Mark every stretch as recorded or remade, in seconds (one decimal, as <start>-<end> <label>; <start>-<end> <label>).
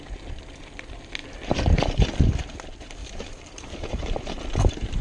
0.0-3.0 recorded; 3.0-4.4 remade; 4.4-5.0 recorded